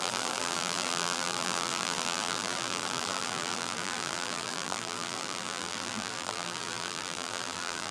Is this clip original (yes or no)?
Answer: no